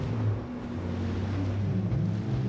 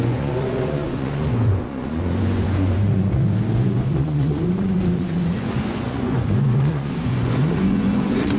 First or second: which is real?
first